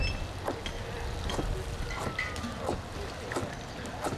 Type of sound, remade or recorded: recorded